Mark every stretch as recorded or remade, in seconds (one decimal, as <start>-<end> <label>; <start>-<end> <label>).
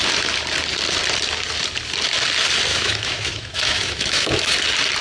0.0-2.7 recorded; 2.7-4.5 remade; 4.5-5.0 recorded